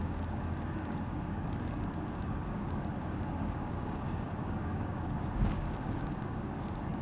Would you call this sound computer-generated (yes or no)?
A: yes